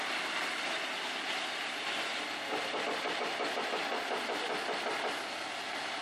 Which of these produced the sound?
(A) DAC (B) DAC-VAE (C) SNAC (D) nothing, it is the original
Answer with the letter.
D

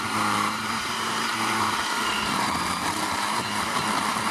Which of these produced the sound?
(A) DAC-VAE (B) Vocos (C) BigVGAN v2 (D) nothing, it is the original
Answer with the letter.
C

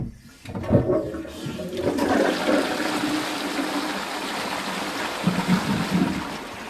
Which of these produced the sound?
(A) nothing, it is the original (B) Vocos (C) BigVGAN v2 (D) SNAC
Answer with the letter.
A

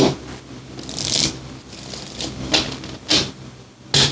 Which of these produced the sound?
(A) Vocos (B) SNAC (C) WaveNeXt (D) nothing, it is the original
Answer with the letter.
D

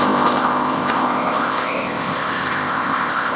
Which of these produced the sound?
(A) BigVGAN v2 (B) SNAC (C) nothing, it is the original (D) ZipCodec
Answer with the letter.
D